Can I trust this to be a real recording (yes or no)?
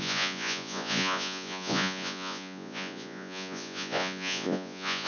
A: no